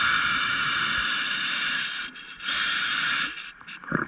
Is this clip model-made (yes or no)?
no